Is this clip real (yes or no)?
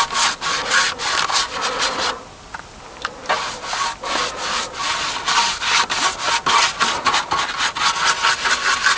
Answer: yes